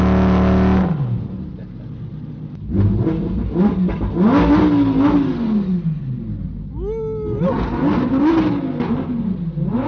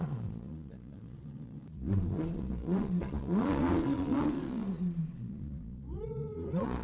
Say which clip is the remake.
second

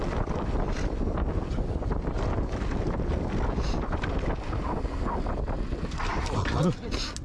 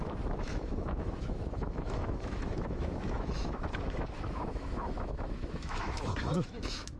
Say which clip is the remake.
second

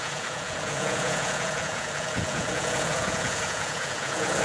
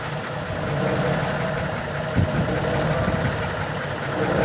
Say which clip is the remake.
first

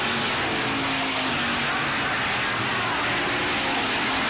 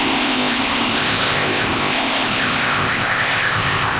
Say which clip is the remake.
second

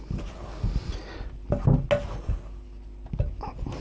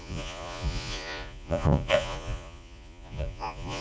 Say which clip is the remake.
second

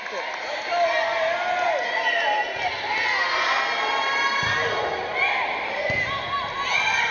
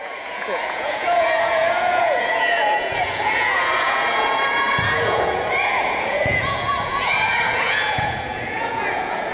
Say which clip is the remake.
second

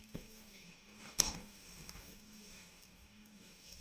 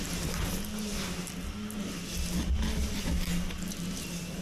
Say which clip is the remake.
first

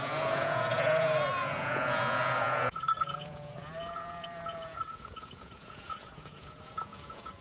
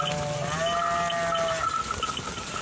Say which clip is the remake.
first